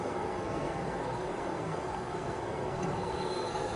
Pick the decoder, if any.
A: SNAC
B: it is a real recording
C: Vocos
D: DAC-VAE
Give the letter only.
A